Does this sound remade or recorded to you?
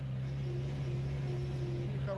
recorded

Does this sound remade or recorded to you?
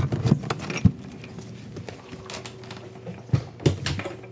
recorded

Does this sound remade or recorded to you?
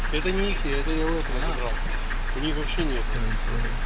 recorded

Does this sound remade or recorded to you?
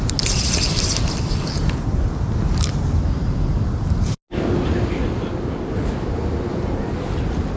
recorded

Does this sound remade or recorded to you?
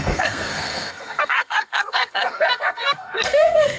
remade